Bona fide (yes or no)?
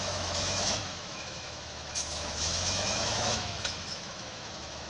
no